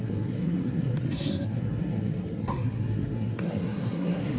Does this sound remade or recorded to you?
remade